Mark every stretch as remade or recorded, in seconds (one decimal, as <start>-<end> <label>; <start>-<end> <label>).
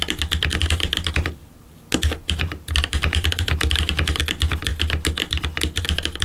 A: 0.0-0.5 recorded; 0.5-4.2 remade; 4.2-6.2 recorded